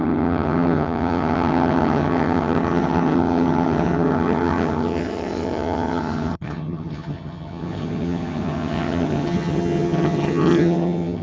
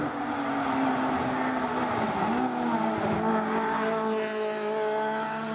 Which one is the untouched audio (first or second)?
second